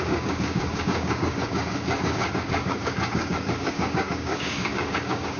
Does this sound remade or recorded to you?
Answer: remade